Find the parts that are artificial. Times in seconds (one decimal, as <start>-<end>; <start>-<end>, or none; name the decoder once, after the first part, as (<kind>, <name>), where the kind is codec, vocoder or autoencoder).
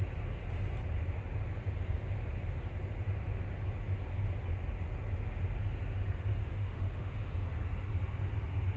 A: 6.4-7.3 (autoencoder, DAC-VAE)